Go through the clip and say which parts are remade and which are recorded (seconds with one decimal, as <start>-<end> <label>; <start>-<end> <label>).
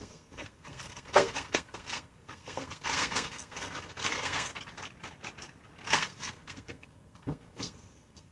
0.0-4.5 remade; 4.5-5.9 recorded; 5.9-8.3 remade